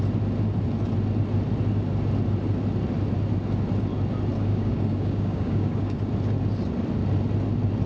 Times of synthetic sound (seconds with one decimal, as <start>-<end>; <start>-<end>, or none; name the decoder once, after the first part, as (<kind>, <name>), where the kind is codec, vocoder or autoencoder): 4.5-6.0 (codec, DAC)